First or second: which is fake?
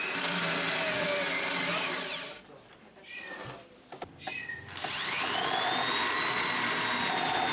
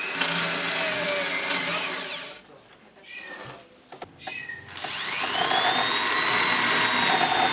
first